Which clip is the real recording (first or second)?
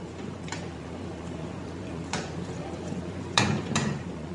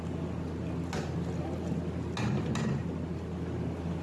second